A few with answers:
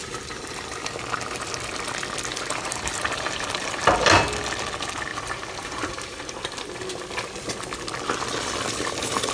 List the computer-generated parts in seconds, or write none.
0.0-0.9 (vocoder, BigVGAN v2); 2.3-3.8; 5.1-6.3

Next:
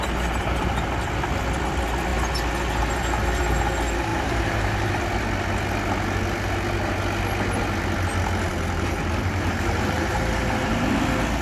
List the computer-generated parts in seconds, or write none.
4.1-4.9 (vocoder, BigVGAN v2); 8.5-10.9

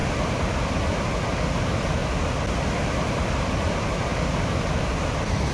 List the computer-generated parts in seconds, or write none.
1.6-2.0 (vocoder, BigVGAN v2); 2.8-4.1; 4.6-5.5